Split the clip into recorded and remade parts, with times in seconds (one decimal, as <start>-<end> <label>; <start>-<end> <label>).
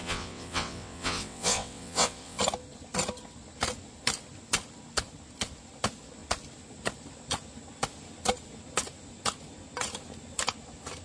0.0-2.4 remade; 2.4-11.0 recorded